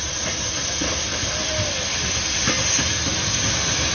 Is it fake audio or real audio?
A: real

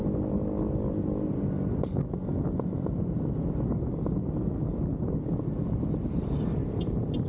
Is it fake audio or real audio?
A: real